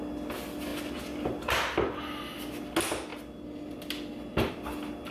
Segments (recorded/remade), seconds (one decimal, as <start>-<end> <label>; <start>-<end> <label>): 0.0-5.1 recorded